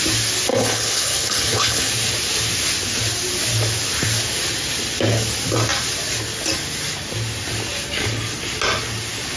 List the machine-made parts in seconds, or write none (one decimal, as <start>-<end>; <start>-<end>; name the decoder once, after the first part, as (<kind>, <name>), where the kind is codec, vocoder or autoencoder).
0.5-1.9 (codec, HILCodec)

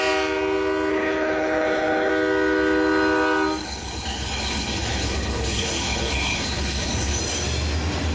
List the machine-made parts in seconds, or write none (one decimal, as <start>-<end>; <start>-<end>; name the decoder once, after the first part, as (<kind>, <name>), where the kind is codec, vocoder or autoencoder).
0.9-2.1 (codec, HILCodec); 3.6-7.2

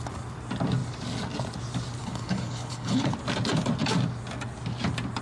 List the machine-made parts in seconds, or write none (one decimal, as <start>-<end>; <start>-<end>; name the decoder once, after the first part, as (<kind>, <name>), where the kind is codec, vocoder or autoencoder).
2.0-3.1 (codec, HILCodec)

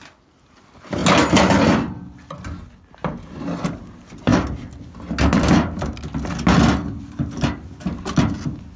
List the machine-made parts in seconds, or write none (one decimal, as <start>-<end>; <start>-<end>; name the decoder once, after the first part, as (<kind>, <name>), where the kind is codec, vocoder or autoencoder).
none